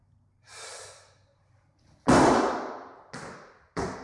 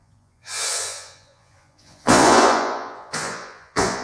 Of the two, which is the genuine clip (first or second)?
first